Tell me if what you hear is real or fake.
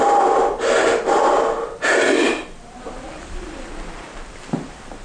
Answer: fake